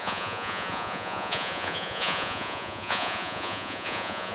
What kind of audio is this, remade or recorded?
remade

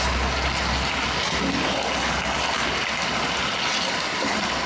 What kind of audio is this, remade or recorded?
recorded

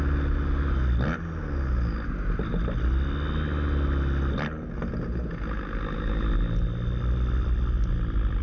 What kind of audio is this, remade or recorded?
recorded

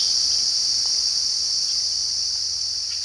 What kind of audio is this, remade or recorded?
recorded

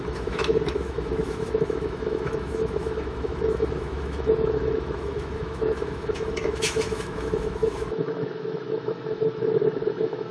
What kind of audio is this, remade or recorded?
remade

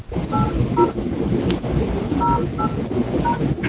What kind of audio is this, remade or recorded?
recorded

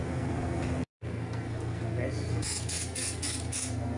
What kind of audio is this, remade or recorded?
remade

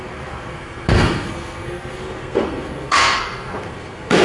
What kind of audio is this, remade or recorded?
remade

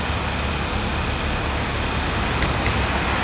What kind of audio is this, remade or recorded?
recorded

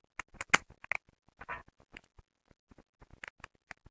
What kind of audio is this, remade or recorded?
recorded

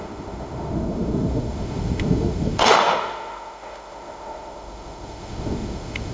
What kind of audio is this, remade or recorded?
remade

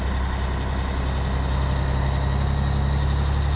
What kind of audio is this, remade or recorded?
recorded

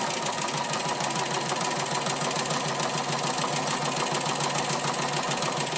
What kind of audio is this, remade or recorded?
recorded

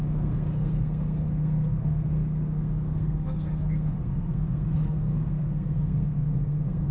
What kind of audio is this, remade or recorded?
remade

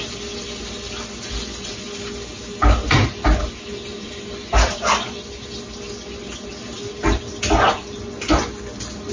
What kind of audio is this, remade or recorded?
recorded